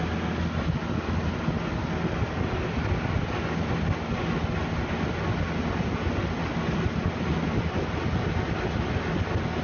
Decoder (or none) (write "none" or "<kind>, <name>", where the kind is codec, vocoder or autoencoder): none